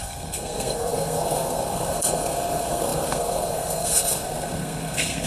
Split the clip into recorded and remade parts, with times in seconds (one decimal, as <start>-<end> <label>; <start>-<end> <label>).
0.0-5.3 remade